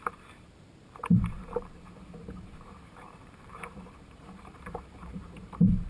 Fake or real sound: fake